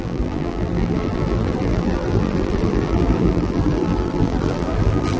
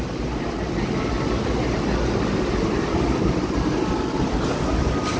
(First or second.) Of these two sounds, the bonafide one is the second